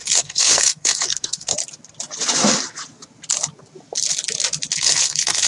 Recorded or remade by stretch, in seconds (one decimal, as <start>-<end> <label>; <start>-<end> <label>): 0.0-1.5 remade; 1.5-4.8 recorded; 4.8-5.5 remade